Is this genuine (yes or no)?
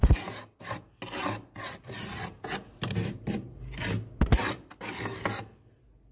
yes